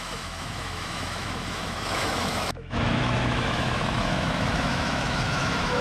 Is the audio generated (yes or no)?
yes